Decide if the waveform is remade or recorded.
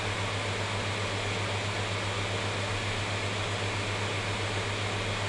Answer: recorded